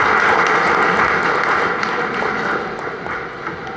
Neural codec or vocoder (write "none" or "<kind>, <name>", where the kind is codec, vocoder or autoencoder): none